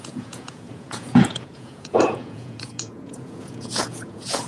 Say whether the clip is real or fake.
fake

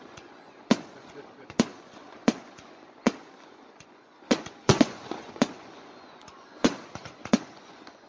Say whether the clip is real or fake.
fake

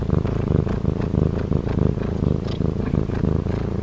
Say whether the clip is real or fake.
real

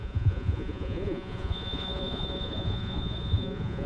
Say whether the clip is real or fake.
fake